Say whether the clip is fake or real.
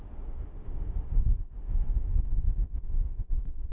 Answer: fake